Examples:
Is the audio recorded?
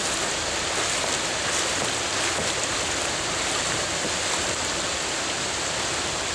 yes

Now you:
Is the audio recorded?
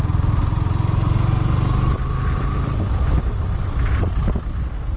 yes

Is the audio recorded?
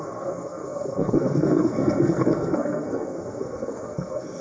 no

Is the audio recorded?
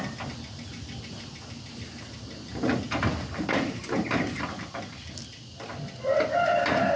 yes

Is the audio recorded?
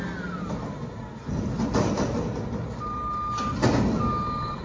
yes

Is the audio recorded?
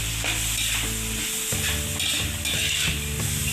yes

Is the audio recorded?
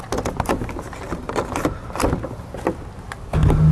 yes